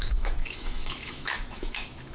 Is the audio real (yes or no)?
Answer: no